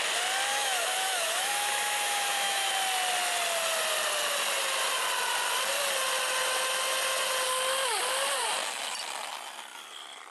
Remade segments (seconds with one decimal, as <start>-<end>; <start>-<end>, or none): 0.5-2.7